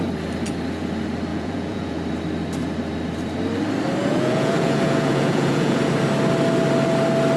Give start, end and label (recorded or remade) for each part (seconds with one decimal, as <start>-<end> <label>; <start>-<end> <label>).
0.0-1.3 recorded; 1.3-2.0 remade; 2.0-4.0 recorded; 4.0-5.8 remade; 5.8-7.4 recorded